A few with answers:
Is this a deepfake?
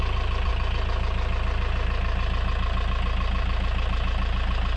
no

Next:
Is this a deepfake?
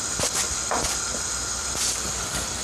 no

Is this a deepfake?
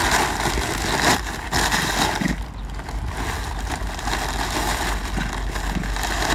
no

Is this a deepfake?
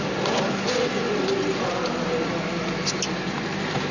no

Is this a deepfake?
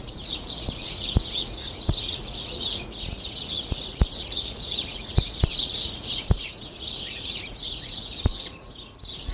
yes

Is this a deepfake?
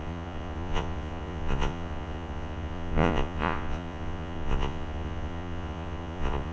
yes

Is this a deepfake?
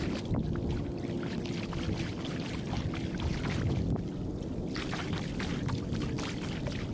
no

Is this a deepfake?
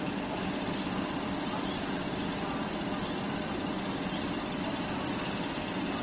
no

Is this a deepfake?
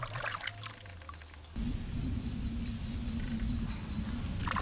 no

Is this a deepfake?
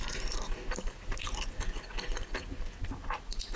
no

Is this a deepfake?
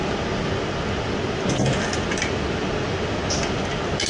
no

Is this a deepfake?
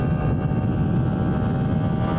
no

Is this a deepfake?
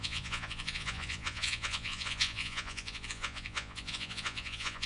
yes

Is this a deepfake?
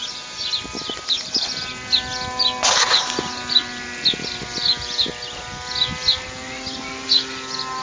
no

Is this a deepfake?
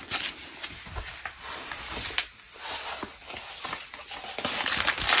no